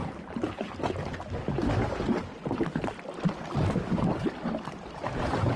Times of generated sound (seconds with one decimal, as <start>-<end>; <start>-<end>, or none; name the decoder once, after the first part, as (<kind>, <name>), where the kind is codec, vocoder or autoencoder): none